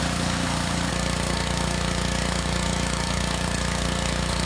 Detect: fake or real fake